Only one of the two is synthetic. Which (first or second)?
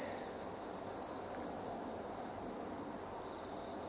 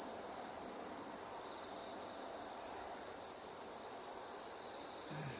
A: second